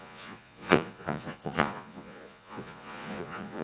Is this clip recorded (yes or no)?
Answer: no